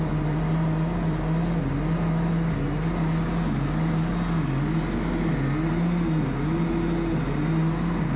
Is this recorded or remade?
recorded